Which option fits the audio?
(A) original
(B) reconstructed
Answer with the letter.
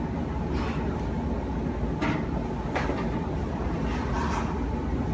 A